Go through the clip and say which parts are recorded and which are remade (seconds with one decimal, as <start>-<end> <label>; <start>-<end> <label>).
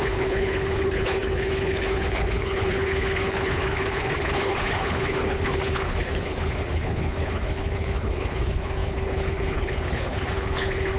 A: 0.0-11.0 remade